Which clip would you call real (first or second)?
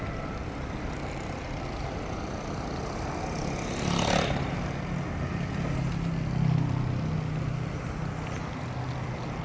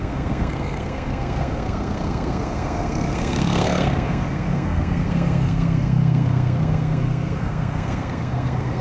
first